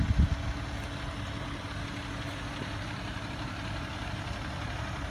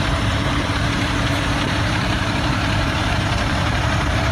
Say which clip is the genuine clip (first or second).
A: first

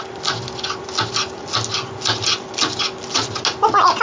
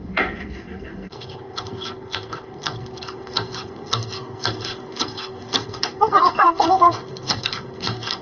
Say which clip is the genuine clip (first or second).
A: first